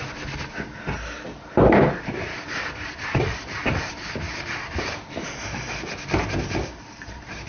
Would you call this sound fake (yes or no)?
no